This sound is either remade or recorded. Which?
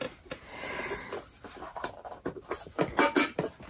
recorded